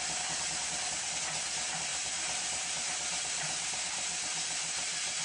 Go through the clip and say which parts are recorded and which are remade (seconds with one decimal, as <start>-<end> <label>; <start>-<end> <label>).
0.0-1.9 recorded; 1.9-5.2 remade